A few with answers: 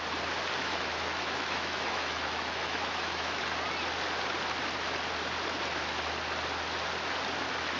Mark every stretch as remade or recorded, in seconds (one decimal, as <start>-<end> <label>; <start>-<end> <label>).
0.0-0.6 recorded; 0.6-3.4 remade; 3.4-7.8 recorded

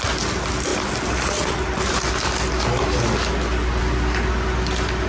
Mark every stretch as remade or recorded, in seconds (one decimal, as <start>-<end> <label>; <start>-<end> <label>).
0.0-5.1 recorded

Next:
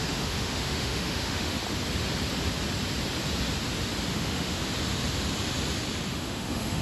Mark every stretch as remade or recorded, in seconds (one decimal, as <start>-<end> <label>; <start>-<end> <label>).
0.0-1.6 remade; 1.6-4.1 recorded; 4.1-4.6 remade; 4.6-6.1 recorded; 6.1-6.8 remade